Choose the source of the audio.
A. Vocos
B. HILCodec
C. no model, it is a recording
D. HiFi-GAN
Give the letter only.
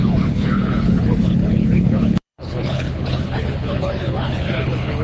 B